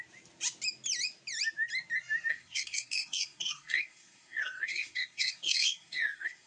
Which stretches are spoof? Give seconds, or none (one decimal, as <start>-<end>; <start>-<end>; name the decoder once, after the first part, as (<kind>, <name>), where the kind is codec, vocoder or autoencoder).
2.3-6.5 (codec, SNAC)